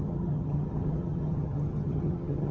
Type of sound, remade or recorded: remade